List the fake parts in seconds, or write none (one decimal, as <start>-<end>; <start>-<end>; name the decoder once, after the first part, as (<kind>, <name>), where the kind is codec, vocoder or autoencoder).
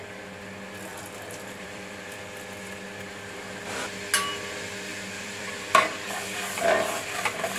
0.9-2.2 (vocoder, BigVGAN v2); 4.9-7.6